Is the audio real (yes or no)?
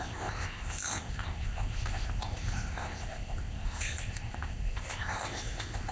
no